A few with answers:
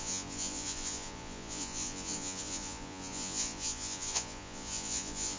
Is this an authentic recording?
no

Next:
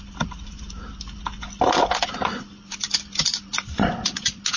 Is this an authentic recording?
yes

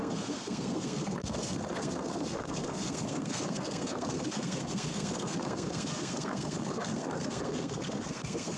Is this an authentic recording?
no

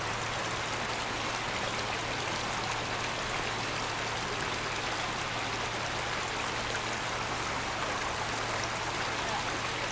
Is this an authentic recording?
yes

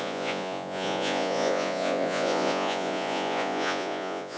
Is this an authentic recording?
no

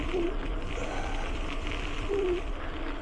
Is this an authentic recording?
yes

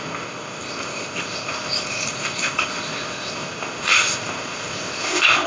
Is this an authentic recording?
no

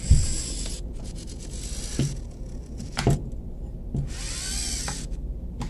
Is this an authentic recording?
yes